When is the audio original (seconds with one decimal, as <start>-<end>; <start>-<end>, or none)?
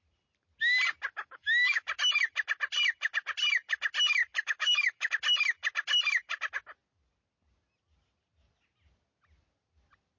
0.0-1.1; 1.8-4.2; 5.1-10.2